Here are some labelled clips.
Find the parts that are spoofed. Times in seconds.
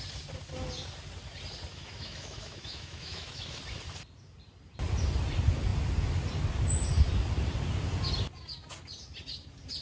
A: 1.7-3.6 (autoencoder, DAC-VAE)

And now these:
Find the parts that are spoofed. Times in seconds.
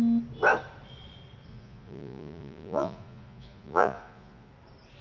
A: 1.5-4.5 (vocoder, Vocos)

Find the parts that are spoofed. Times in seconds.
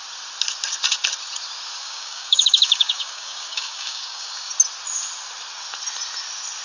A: 1.8-4.5 (codec, DAC)